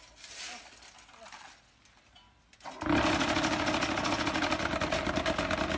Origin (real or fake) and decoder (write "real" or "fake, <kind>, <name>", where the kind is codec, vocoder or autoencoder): real